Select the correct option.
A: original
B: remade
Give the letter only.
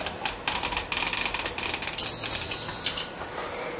A